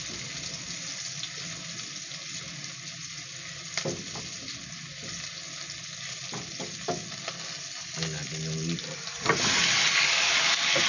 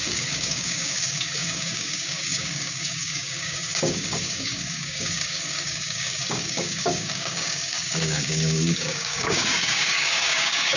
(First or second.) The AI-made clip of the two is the second